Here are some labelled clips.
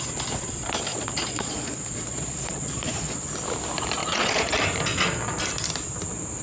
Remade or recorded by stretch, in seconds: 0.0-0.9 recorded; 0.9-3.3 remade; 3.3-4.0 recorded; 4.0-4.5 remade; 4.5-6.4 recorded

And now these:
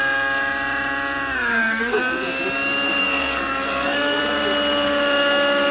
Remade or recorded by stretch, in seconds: 0.0-1.5 recorded; 1.5-2.0 remade; 2.0-3.0 recorded; 3.0-4.2 remade; 4.2-5.7 recorded